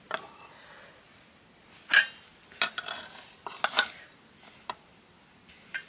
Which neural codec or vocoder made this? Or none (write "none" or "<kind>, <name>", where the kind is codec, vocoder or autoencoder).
none